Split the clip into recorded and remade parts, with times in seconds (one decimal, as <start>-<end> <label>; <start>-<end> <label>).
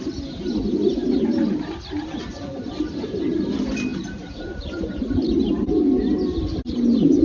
0.0-3.9 recorded; 3.9-4.7 remade; 4.7-7.2 recorded